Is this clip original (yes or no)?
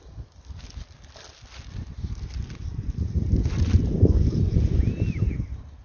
yes